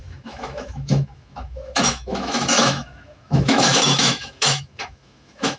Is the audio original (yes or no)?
no